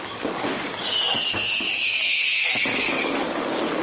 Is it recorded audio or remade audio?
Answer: remade